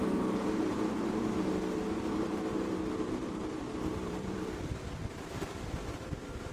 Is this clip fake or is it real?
fake